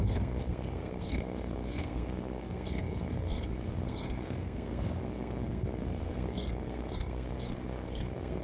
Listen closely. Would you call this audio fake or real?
fake